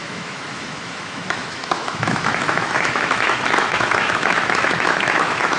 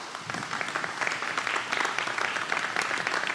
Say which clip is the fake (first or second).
first